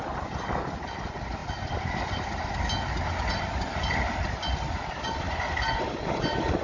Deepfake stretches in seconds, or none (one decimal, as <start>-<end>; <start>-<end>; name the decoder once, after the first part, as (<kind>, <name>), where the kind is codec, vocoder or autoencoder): none